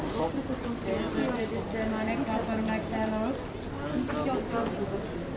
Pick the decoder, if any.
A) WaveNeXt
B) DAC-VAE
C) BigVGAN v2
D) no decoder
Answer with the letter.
D